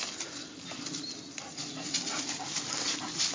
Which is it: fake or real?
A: real